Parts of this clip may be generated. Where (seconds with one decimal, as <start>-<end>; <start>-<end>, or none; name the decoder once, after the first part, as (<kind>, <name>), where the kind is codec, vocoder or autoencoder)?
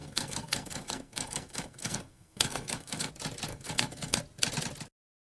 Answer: 0.0-3.1 (codec, SNAC); 3.5-4.2